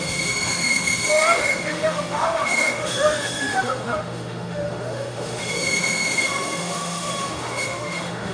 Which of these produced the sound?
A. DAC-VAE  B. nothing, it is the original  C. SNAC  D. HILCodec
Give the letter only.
A